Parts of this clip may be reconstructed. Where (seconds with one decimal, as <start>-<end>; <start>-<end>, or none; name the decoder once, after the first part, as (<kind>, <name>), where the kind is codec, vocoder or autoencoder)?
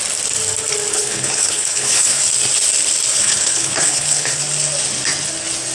0.9-2.2 (codec, HILCodec); 3.1-4.4